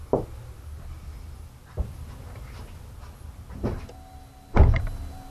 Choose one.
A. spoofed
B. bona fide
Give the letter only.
B